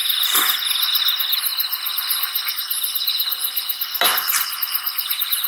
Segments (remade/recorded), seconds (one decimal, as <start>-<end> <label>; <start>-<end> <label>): 0.0-0.6 remade; 0.6-5.5 recorded